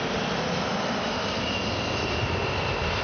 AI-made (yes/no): no